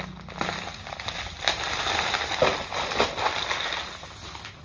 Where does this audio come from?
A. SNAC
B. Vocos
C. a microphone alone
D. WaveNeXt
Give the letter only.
C